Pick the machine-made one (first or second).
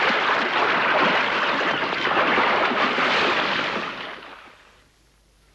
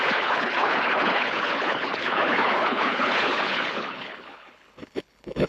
second